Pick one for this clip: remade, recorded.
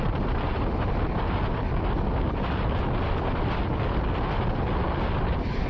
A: recorded